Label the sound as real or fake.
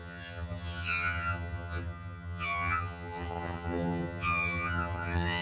fake